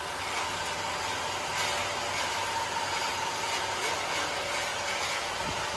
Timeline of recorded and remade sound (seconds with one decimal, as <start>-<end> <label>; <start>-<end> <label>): 0.0-3.1 recorded; 3.1-4.2 remade; 4.2-4.7 recorded; 4.7-5.3 remade; 5.3-5.8 recorded